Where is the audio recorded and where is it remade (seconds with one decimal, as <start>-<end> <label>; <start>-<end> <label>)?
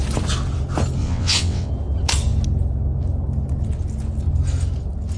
0.0-1.0 recorded; 1.0-1.7 remade; 1.7-5.2 recorded